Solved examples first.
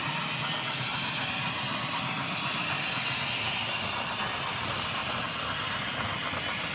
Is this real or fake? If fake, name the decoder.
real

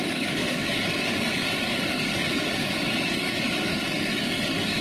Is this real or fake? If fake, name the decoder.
fake, codec, DAC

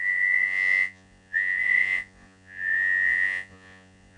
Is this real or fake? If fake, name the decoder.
fake, vocoder, Vocos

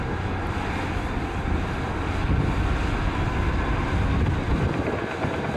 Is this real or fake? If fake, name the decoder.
real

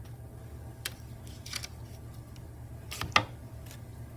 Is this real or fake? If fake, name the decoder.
real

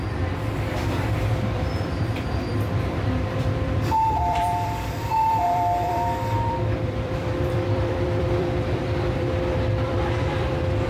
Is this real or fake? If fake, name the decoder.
fake, vocoder, BigVGAN v2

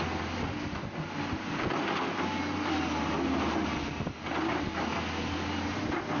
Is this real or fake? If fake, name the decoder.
real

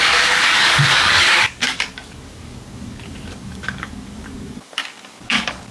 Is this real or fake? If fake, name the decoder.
fake, codec, DAC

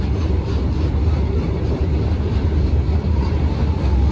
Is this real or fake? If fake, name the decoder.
real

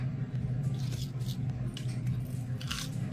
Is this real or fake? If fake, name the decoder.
real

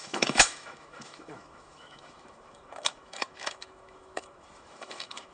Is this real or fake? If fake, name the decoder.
fake, autoencoder, DAC-VAE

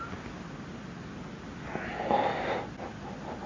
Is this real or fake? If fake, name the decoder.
real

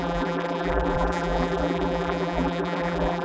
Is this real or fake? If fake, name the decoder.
fake, vocoder, BigVGAN v2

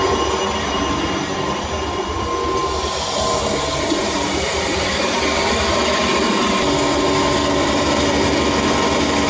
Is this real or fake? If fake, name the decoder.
real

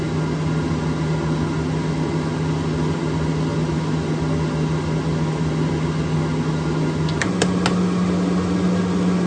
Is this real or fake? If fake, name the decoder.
real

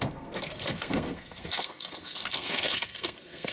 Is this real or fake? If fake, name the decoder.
fake, codec, SNAC